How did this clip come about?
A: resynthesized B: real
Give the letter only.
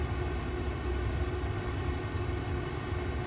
B